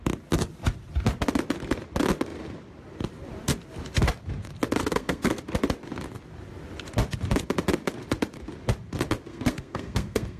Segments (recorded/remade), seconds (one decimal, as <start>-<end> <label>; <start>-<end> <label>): 0.0-4.8 recorded; 4.8-5.4 remade; 5.4-9.3 recorded; 9.3-10.4 remade